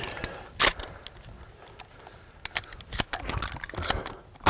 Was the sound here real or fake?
real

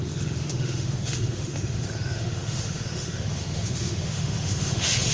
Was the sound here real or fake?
fake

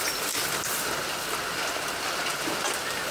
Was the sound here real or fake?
real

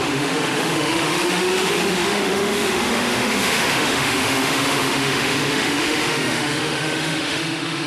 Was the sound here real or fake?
fake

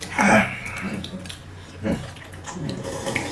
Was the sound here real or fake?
real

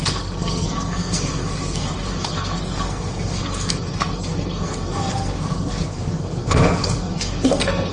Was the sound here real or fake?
fake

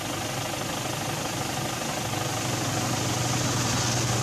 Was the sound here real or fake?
real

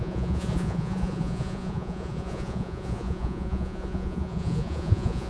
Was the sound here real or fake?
fake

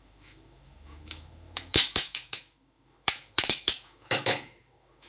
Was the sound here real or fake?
fake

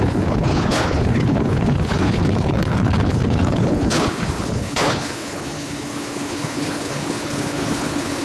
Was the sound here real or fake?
fake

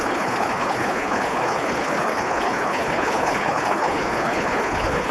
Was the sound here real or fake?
fake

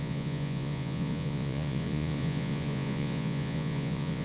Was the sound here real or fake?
fake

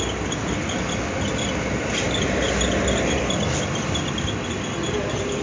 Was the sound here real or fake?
real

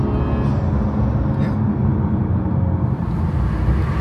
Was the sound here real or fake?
real